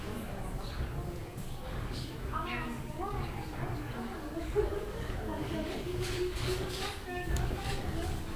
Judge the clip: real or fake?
fake